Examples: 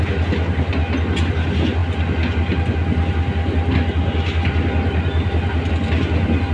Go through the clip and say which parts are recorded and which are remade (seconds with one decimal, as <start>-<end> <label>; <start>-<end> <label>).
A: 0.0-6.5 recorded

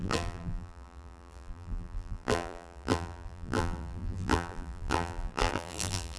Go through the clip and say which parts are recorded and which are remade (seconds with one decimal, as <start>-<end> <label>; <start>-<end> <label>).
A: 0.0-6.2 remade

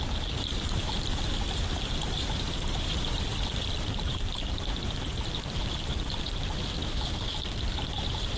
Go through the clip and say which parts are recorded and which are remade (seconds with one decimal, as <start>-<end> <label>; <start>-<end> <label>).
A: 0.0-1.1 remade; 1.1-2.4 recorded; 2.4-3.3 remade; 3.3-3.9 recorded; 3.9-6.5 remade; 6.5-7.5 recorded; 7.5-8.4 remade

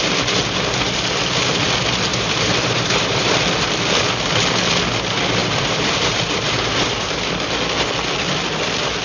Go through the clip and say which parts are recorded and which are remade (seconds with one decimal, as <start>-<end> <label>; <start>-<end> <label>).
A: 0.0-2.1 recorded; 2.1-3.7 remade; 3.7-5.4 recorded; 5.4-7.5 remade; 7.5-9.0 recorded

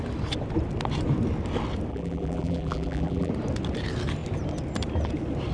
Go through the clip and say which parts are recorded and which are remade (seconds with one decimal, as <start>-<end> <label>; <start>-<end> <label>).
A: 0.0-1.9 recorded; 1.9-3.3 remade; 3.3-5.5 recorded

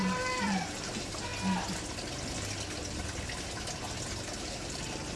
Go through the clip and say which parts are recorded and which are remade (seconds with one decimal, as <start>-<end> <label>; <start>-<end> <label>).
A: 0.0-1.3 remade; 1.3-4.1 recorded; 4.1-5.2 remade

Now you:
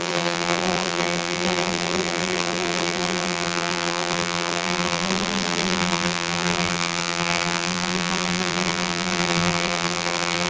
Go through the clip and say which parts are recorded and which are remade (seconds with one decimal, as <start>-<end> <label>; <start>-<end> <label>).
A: 0.0-10.5 remade

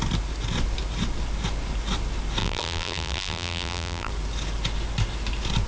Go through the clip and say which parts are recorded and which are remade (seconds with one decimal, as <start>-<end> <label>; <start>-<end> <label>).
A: 0.0-2.4 recorded; 2.4-4.1 remade; 4.1-5.7 recorded